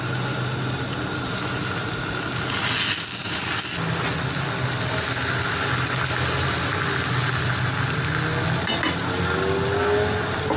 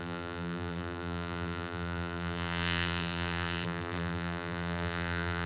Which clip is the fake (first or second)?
second